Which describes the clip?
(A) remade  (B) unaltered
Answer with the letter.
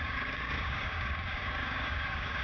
A